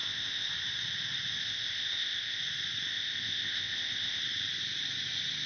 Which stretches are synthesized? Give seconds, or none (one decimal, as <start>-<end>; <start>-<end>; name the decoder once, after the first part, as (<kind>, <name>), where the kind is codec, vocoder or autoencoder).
0.0-0.5 (codec, ZipCodec); 1.4-2.4; 2.9-4.2